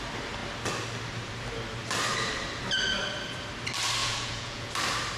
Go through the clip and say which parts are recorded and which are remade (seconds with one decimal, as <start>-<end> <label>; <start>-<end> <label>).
0.0-4.0 recorded; 4.0-4.7 remade; 4.7-5.2 recorded